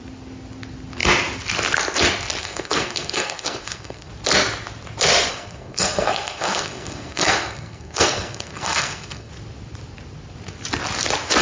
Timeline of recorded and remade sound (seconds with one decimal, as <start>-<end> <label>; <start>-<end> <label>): 0.0-2.4 recorded; 2.4-4.1 remade; 4.1-5.3 recorded; 5.3-9.3 remade; 9.3-11.4 recorded